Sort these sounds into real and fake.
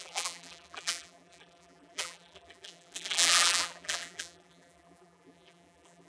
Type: fake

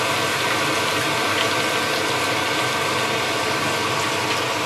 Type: real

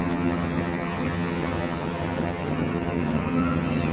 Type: fake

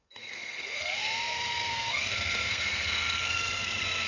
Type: fake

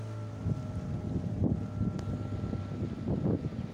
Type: real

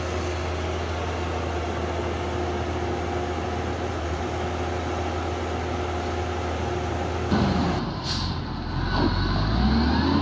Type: real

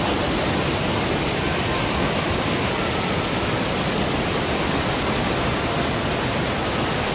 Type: real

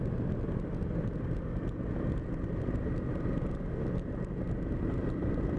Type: real